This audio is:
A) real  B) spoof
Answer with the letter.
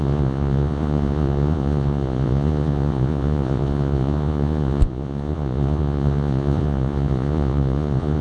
B